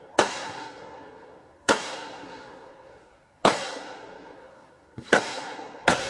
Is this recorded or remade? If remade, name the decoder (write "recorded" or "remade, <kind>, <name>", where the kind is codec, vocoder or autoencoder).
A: remade, codec, SNAC